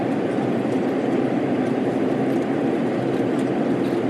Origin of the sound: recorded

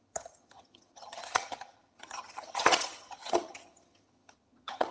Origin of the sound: remade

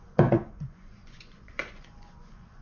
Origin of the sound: remade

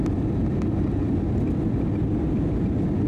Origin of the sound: recorded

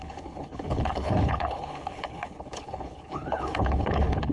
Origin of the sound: remade